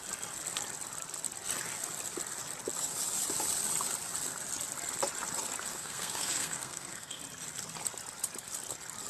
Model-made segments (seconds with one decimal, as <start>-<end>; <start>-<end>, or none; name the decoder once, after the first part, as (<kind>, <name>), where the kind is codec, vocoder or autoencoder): 5.7-7.2 (codec, SNAC)